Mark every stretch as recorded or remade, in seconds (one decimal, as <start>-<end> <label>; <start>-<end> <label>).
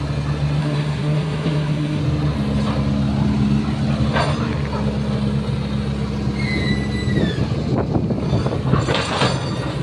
0.0-0.6 recorded; 0.6-2.0 remade; 2.0-9.8 recorded